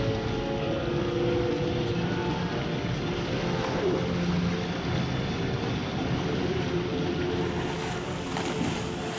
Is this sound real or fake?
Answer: real